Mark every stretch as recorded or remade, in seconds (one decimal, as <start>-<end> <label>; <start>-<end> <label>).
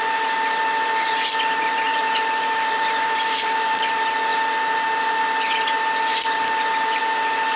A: 0.0-1.9 recorded; 1.9-3.9 remade; 3.9-6.1 recorded; 6.1-7.0 remade; 7.0-7.6 recorded